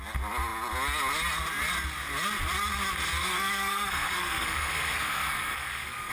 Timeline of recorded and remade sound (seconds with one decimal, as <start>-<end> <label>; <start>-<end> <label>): 0.0-3.2 recorded; 3.2-6.1 remade